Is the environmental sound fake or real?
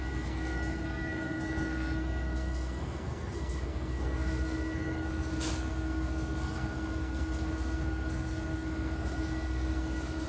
fake